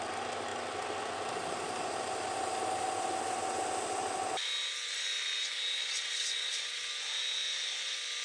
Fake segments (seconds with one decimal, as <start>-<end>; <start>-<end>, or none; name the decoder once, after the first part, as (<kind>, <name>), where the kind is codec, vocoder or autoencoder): 5.8-6.9 (vocoder, WaveNeXt)